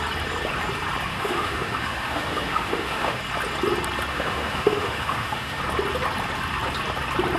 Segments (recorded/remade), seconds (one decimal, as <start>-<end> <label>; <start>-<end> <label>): 0.0-1.1 recorded; 1.1-3.2 remade; 3.2-4.1 recorded; 4.1-5.6 remade; 5.6-7.4 recorded